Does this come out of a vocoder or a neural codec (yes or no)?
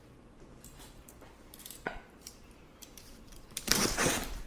yes